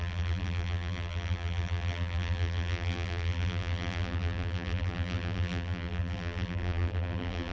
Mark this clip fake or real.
fake